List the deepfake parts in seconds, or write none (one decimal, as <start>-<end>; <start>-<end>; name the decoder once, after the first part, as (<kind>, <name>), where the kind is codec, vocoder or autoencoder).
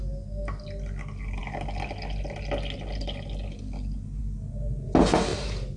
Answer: 5.3-5.8 (vocoder, BigVGAN v2)